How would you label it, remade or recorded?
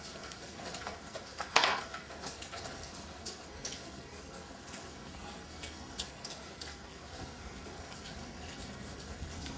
remade